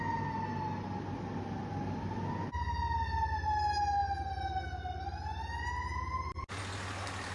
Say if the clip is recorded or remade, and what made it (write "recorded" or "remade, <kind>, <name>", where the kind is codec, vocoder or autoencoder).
recorded